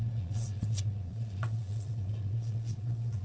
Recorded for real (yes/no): no